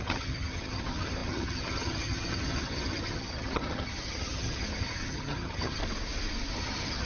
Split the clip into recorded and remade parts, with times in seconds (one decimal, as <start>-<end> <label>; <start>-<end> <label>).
0.0-5.8 remade; 5.8-6.5 recorded; 6.5-7.0 remade

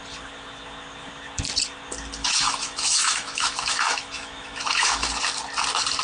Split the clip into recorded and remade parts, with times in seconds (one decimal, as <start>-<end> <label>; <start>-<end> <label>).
0.0-2.2 recorded; 2.2-5.1 remade; 5.1-6.0 recorded

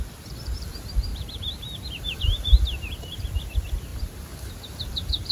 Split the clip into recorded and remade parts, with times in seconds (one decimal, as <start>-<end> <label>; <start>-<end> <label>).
0.0-1.1 recorded; 1.1-3.2 remade; 3.2-3.9 recorded; 3.9-4.5 remade; 4.5-5.3 recorded

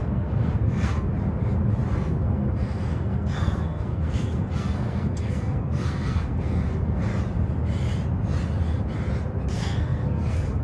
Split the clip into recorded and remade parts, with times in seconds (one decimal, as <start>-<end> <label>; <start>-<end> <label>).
0.0-1.1 remade; 1.1-1.9 recorded; 1.9-7.1 remade; 7.1-9.5 recorded; 9.5-10.6 remade